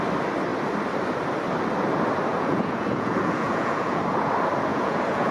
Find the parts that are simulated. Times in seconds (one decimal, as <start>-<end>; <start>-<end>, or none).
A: 2.3-4.0; 4.7-5.3